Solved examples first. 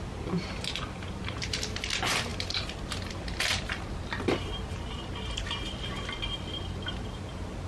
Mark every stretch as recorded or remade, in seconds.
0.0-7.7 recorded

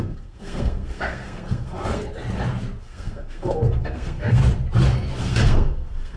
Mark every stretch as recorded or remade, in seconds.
0.0-2.1 remade; 2.1-2.8 recorded; 2.8-4.4 remade; 4.4-5.2 recorded; 5.2-6.2 remade

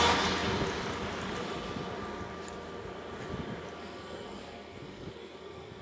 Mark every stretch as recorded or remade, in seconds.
0.0-3.8 recorded; 3.8-5.8 remade

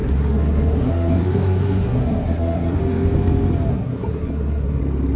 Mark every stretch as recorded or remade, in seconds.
0.0-2.8 remade; 2.8-3.7 recorded; 3.7-4.8 remade; 4.8-5.2 recorded

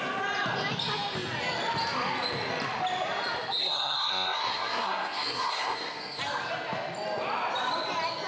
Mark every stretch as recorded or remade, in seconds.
0.0-3.6 recorded; 3.6-6.2 remade; 6.2-8.3 recorded

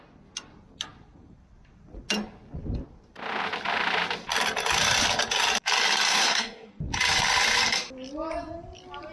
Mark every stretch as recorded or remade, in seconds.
0.0-6.1 recorded; 6.1-6.7 remade; 6.7-9.1 recorded

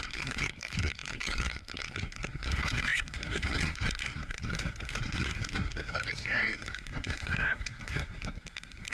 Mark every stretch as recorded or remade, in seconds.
0.0-8.9 remade